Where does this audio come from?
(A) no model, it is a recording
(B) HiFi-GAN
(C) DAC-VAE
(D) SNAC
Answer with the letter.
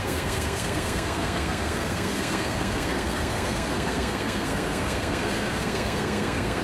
D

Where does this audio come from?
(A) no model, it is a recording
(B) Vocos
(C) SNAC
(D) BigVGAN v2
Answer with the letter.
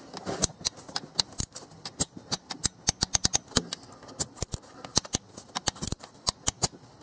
A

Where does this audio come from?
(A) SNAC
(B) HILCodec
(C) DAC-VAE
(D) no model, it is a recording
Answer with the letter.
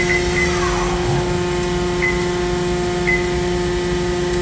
D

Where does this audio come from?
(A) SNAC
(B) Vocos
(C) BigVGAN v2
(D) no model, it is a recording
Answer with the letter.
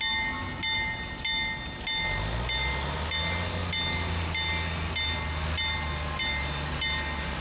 D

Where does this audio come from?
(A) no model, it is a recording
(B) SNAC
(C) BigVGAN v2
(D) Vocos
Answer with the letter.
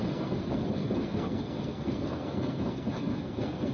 B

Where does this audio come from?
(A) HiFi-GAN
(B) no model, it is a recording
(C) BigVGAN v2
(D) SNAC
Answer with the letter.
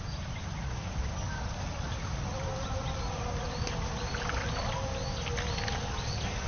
B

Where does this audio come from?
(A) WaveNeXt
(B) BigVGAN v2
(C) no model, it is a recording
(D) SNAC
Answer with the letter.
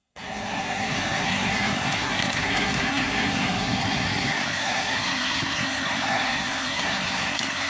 D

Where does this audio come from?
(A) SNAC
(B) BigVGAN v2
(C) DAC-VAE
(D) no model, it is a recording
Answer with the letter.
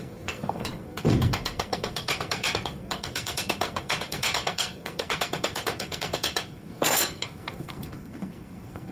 A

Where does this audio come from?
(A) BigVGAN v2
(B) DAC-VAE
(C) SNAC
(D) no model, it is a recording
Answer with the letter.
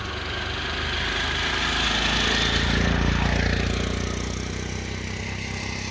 D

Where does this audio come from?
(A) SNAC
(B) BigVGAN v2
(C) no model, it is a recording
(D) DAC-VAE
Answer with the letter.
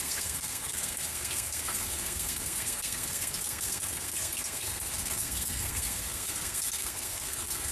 A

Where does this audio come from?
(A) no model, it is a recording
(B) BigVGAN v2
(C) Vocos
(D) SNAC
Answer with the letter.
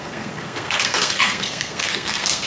D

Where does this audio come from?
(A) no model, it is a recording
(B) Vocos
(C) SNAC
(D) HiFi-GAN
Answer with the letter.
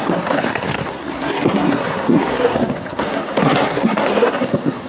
C